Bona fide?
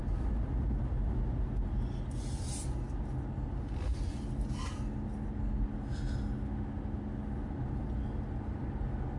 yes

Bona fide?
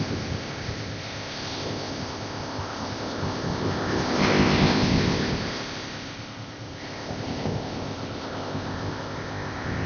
no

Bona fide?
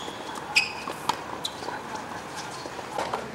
yes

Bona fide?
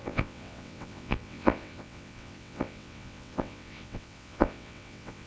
no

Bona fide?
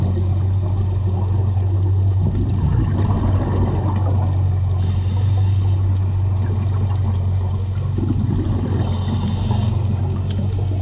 yes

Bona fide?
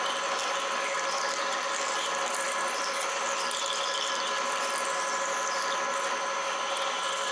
yes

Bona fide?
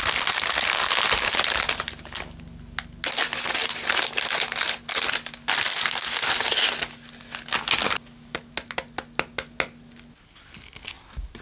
yes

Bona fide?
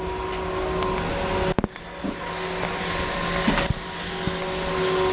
yes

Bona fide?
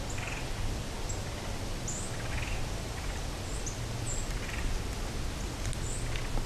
yes